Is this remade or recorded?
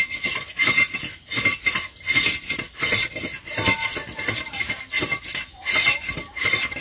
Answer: recorded